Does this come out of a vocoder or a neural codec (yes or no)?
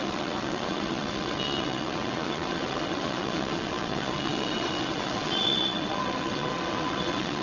yes